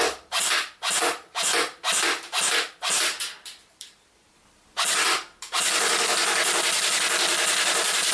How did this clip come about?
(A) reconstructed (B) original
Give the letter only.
B